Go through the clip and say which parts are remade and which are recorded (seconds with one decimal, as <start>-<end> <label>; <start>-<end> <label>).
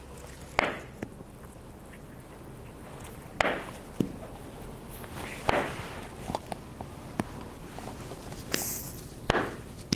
0.0-7.6 recorded; 7.6-8.8 remade; 8.8-10.0 recorded